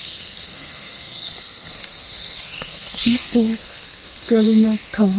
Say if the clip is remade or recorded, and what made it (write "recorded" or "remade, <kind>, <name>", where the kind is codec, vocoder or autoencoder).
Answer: remade, codec, SNAC